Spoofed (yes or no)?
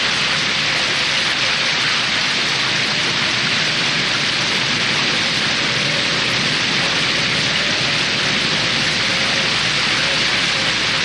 no